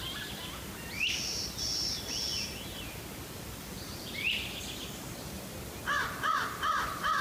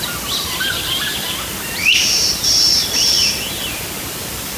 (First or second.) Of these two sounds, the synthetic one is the second